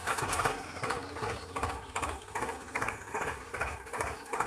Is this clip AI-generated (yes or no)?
yes